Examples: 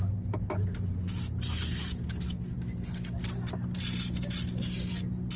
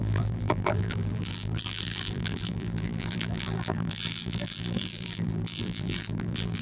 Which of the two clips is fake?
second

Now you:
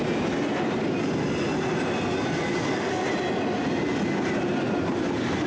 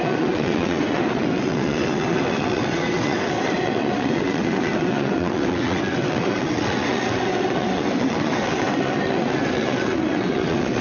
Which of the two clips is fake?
second